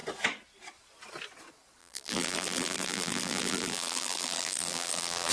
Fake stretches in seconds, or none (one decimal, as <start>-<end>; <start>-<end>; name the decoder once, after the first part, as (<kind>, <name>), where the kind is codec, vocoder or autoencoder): 1.8-5.3 (vocoder, BigVGAN v2)